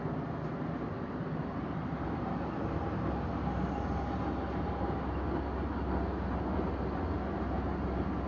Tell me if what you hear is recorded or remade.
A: recorded